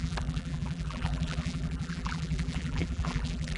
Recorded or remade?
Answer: remade